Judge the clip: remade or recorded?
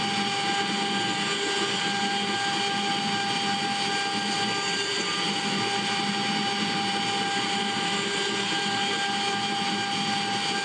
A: recorded